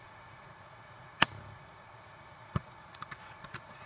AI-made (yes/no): yes